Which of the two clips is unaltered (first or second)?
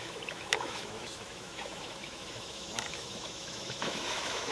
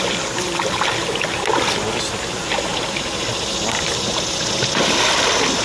second